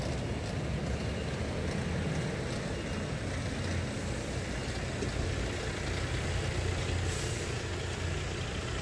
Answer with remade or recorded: recorded